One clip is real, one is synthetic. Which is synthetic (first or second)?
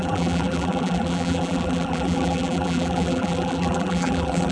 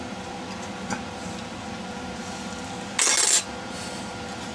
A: first